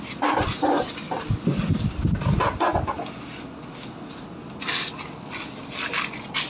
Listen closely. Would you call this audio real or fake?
real